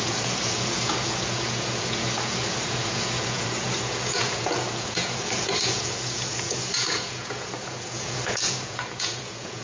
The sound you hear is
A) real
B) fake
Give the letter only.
B